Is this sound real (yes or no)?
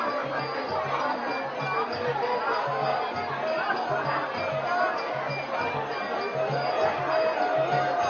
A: yes